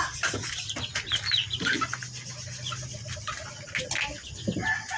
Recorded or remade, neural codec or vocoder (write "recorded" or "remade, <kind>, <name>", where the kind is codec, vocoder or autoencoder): recorded